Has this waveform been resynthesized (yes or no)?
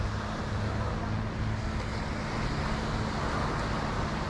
no